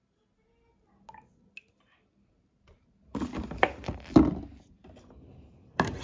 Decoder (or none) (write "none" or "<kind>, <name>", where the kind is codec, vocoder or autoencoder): none